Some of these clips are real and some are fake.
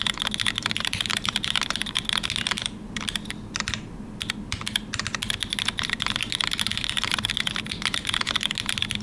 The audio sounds real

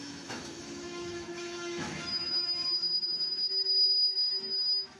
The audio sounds fake